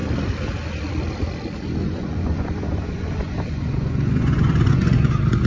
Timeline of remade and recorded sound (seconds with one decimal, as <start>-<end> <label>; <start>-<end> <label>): 0.0-1.8 recorded; 1.8-5.1 remade; 5.1-5.5 recorded